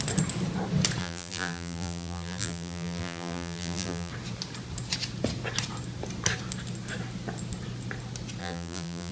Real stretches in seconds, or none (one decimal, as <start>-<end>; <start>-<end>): 0.0-1.0; 4.1-8.4